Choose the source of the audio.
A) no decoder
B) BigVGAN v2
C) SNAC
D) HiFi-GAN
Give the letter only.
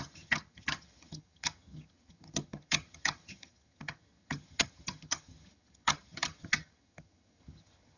D